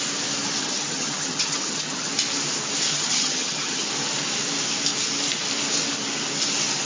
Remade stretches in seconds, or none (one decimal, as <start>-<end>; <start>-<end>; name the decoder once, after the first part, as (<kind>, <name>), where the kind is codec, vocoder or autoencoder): 0.6-2.1 (vocoder, HiFi-GAN); 2.9-3.9